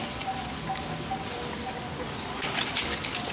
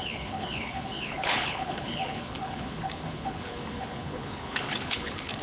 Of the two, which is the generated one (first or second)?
second